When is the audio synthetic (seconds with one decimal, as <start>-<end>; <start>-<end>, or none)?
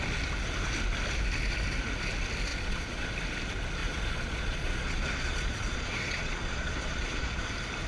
2.5-3.1; 3.8-7.4